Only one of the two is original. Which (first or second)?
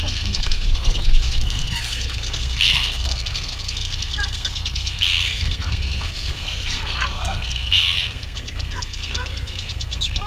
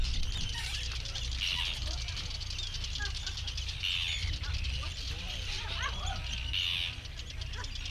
second